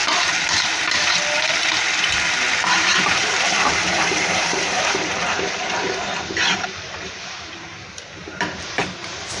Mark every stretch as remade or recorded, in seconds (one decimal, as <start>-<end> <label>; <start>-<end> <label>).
0.0-2.7 recorded; 2.7-9.4 remade